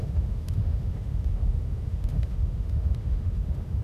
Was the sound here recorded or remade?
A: remade